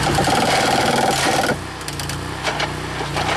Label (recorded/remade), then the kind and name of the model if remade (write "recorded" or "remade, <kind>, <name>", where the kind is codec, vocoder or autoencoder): recorded